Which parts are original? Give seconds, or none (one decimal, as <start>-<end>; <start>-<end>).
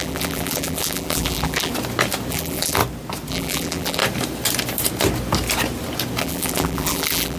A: 1.7-2.3; 2.8-3.3; 4.0-6.2